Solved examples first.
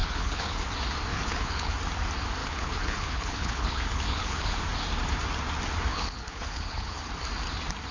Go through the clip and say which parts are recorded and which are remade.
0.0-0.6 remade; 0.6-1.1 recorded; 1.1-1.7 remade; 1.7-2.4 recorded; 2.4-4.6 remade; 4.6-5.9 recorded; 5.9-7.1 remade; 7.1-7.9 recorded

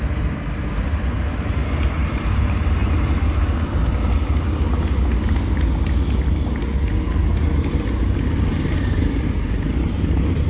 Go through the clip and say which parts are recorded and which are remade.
0.0-10.5 recorded

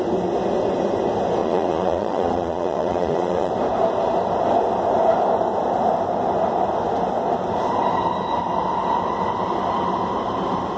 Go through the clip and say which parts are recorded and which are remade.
0.0-1.4 recorded; 1.4-3.5 remade; 3.5-10.8 recorded

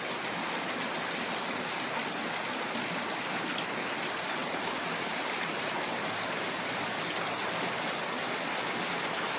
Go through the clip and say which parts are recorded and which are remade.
0.0-4.4 recorded; 4.4-7.1 remade; 7.1-9.4 recorded

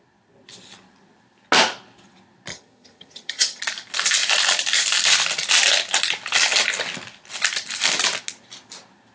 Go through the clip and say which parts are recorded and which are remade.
0.0-2.5 recorded; 2.5-3.6 remade; 3.6-9.1 recorded

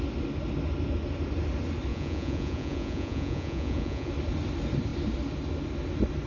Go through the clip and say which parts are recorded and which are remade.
0.0-1.9 recorded; 1.9-4.1 remade; 4.1-6.3 recorded

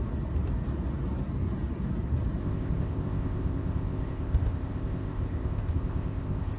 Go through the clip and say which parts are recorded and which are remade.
0.0-2.4 recorded; 2.4-6.6 remade